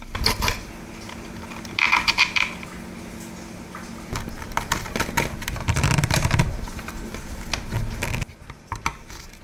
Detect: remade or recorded recorded